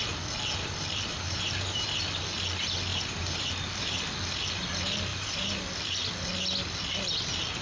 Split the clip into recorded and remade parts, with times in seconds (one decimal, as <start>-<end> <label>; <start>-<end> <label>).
0.0-0.5 recorded; 0.5-2.2 remade; 2.2-2.9 recorded; 2.9-3.5 remade; 3.5-5.1 recorded; 5.1-5.6 remade; 5.6-7.6 recorded